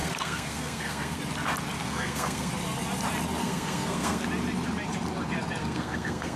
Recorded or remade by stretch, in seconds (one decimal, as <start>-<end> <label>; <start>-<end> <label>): 0.0-1.2 remade; 1.2-1.8 recorded; 1.8-2.5 remade; 2.5-3.4 recorded; 3.4-4.2 remade; 4.2-5.6 recorded; 5.6-6.4 remade